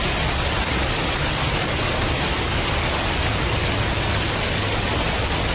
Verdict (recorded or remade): recorded